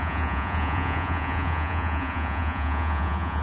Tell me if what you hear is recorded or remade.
remade